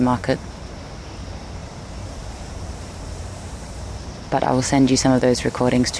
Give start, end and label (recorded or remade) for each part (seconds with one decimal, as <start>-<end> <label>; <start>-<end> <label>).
0.0-1.6 recorded; 1.6-5.2 remade; 5.2-6.0 recorded